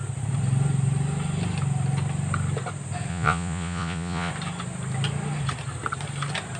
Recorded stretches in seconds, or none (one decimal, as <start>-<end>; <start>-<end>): 0.0-3.1; 4.3-6.6